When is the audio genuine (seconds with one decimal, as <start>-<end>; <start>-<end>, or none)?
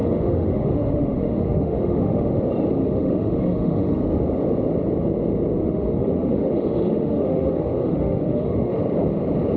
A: 2.3-2.8; 4.0-5.6; 8.7-9.6